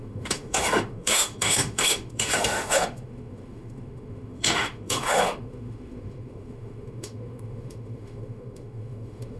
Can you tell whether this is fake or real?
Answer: fake